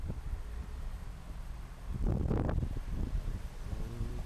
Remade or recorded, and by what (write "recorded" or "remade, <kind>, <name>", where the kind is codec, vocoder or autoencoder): remade, vocoder, BigVGAN v2